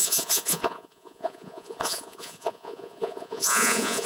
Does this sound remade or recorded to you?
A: remade